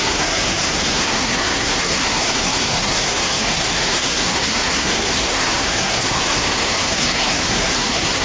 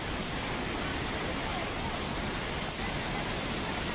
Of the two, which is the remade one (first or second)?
first